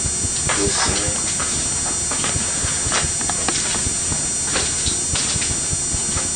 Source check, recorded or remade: recorded